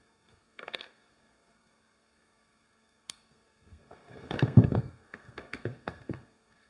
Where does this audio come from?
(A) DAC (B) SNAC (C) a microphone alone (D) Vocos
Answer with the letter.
B